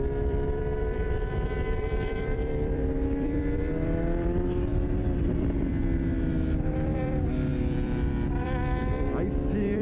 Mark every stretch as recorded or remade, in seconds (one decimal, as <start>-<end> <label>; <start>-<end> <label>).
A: 0.0-9.8 remade